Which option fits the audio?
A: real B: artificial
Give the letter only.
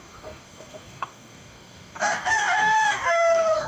B